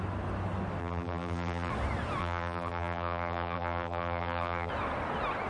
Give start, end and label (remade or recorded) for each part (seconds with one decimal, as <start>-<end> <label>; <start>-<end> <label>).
0.0-0.8 recorded; 0.8-1.7 remade; 1.7-2.2 recorded; 2.2-4.7 remade; 4.7-5.5 recorded